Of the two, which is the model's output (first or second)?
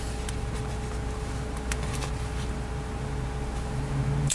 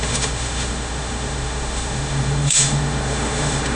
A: second